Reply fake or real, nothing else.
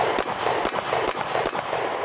fake